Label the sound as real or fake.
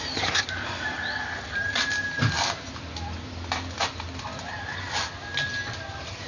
real